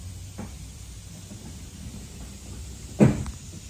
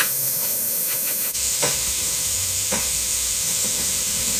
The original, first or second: first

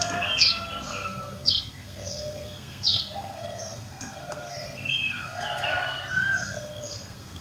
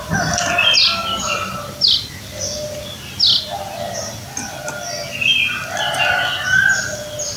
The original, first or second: second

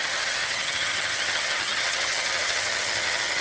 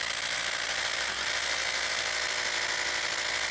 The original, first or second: second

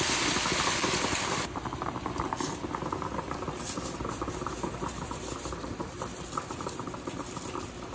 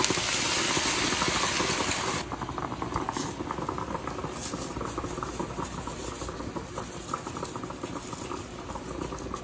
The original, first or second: second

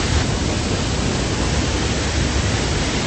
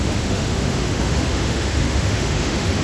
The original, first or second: first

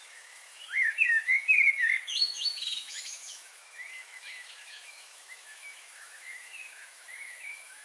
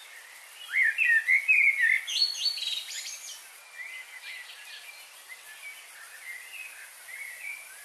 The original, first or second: second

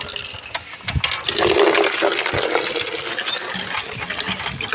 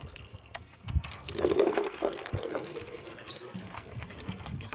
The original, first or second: first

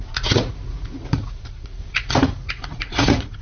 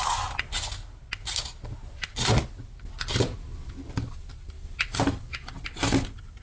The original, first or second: second